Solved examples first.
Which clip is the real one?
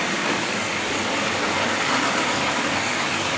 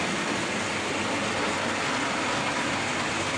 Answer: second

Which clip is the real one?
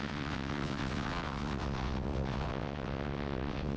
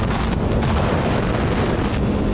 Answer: second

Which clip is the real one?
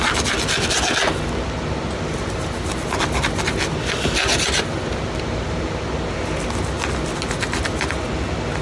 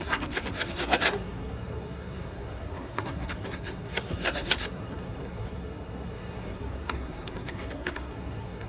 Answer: first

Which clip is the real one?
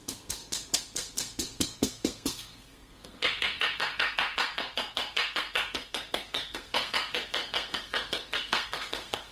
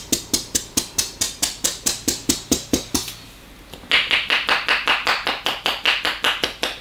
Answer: second